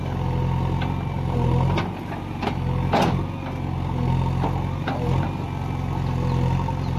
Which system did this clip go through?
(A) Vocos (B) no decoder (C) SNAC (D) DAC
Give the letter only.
B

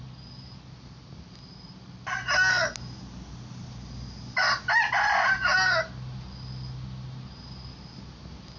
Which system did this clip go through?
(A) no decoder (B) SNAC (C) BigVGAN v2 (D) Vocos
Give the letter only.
A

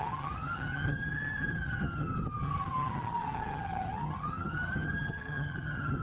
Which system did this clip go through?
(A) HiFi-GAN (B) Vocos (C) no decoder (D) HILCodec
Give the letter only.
A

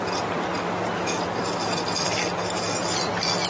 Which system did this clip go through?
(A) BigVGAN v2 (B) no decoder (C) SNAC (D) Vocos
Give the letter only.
B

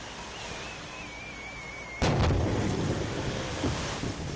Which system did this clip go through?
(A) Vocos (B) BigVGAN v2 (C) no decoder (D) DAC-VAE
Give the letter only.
C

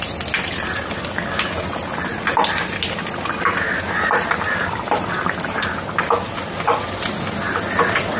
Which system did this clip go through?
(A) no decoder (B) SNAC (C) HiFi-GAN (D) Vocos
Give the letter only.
A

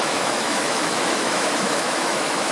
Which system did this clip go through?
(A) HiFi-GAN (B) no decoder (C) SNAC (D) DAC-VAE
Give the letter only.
D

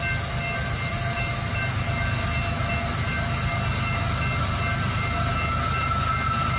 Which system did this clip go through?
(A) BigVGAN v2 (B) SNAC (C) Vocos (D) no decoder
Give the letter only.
D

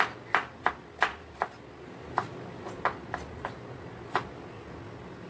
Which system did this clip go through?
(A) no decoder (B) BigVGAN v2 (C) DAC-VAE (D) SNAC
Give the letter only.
A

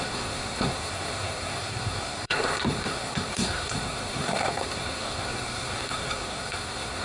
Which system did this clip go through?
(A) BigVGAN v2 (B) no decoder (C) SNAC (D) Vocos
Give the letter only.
C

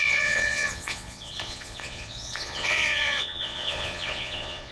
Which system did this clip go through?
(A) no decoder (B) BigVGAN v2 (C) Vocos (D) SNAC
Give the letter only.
C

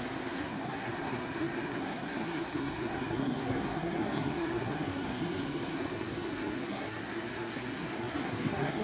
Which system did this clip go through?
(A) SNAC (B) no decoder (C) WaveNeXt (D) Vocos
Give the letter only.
A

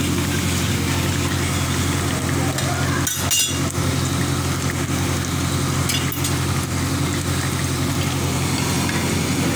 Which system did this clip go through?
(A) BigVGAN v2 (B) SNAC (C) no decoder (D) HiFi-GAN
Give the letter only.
C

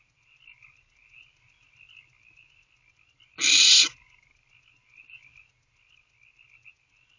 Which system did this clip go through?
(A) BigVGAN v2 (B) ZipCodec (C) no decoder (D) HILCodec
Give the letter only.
C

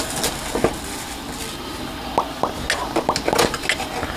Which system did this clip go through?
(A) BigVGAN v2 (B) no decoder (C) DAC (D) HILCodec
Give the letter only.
B